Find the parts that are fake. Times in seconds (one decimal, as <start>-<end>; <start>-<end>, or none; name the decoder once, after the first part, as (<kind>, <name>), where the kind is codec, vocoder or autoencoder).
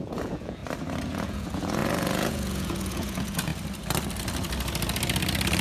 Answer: 0.0-0.6 (vocoder, Vocos); 1.1-3.5